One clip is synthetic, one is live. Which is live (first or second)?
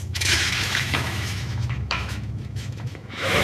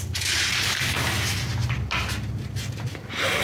second